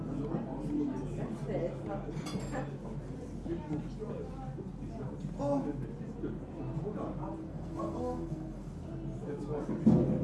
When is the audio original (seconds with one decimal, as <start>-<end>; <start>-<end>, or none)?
0.0-7.4; 8.7-10.2